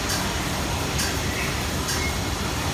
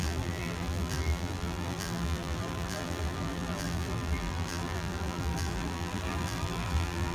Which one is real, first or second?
first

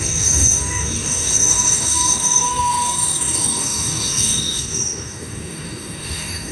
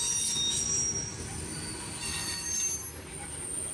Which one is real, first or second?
second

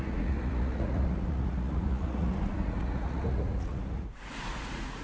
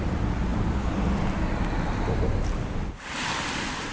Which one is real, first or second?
second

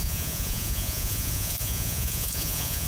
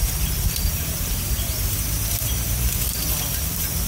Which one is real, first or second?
second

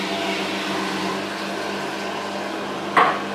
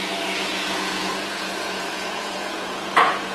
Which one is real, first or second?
first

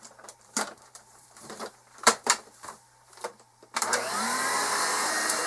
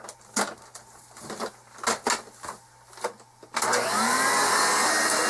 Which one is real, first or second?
second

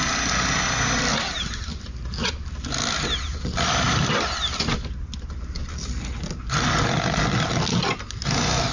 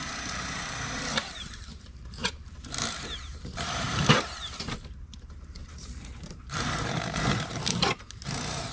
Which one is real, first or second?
first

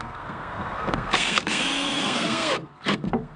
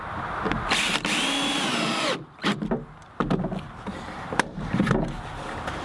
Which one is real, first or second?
second